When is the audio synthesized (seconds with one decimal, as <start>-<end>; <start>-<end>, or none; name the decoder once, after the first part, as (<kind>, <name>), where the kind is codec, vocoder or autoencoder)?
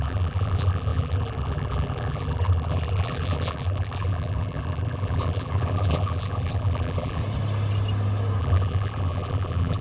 0.0-7.2 (vocoder, BigVGAN v2); 8.4-9.8